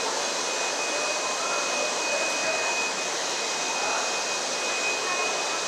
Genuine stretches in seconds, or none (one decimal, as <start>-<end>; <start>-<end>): 0.0-2.4; 3.4-5.7